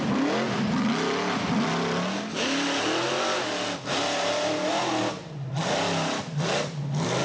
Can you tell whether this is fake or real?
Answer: real